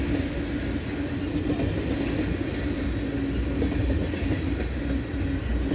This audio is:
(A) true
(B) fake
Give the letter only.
A